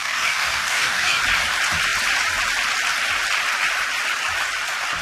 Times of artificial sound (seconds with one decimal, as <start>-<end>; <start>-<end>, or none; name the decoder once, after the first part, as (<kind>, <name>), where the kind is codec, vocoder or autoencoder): 0.0-1.2 (codec, DAC)

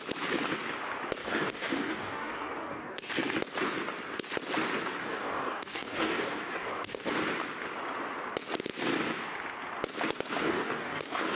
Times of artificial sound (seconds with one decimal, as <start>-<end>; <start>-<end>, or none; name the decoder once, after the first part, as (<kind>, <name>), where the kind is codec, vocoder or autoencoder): 1.2-3.1 (codec, DAC); 5.0-7.1; 10.4-11.4

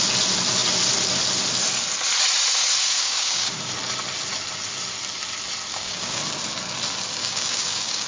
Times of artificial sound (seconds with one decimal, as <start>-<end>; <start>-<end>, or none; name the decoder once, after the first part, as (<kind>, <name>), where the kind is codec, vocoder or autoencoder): 2.8-3.6 (codec, DAC); 5.7-6.2; 7.2-8.1

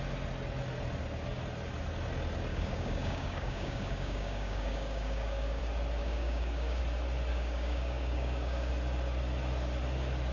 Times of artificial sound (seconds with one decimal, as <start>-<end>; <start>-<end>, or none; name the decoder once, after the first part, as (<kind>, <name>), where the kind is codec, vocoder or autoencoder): 2.5-5.6 (codec, DAC); 6.0-6.8; 7.3-8.7

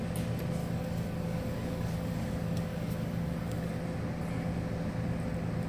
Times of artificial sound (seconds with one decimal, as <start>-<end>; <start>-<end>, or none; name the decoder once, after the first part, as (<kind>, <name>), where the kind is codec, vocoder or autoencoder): 0.6-3.8 (codec, DAC)

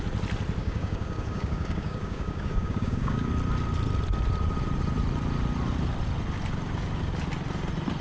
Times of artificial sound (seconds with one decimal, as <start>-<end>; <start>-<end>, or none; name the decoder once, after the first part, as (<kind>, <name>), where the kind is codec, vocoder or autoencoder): 0.6-3.3 (codec, DAC)

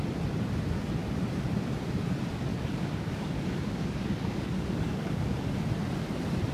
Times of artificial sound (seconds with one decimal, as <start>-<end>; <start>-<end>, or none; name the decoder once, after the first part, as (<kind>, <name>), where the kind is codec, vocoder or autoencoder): 2.5-5.4 (codec, DAC)